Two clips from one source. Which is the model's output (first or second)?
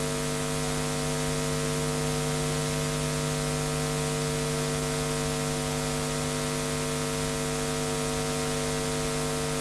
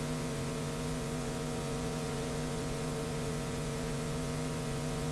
second